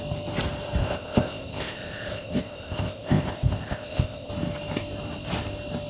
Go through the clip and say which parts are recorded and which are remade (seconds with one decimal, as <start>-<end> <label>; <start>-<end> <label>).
0.0-0.8 recorded; 0.8-4.3 remade; 4.3-5.9 recorded